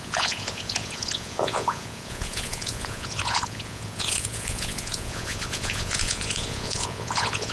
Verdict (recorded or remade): remade